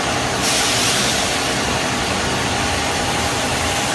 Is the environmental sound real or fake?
fake